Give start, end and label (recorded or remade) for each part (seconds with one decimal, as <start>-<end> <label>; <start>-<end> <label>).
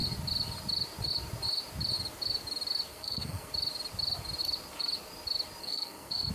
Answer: 0.0-2.9 recorded; 2.9-3.5 remade; 3.5-5.6 recorded; 5.6-6.3 remade